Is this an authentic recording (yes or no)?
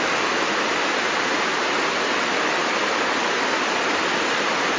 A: yes